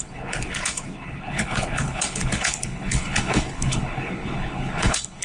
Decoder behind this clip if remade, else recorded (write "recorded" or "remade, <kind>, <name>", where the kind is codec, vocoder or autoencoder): remade, codec, HILCodec